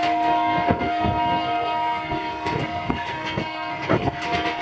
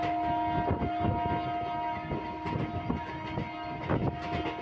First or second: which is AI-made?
first